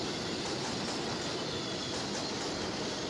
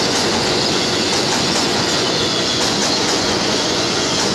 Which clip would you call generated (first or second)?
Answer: second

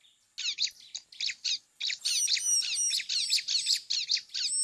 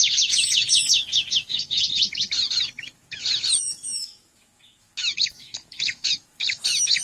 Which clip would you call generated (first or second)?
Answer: second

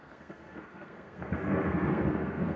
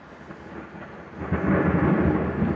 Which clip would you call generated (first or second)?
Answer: first